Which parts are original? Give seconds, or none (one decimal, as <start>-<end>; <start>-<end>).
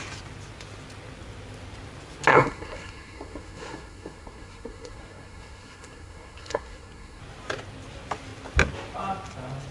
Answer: 0.0-2.3; 7.2-9.7